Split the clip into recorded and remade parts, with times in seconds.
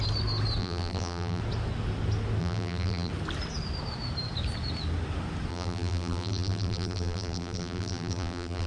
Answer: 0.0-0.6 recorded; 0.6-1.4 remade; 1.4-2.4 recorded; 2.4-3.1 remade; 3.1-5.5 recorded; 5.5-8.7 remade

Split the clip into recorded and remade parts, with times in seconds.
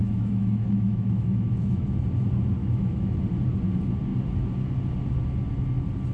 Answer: 0.0-1.8 remade; 1.8-2.6 recorded; 2.6-3.2 remade; 3.2-6.1 recorded